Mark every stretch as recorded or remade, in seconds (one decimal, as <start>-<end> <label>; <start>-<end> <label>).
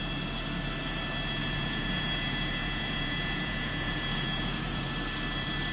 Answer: 0.0-1.4 recorded; 1.4-4.8 remade; 4.8-5.7 recorded